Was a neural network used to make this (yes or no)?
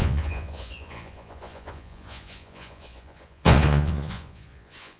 yes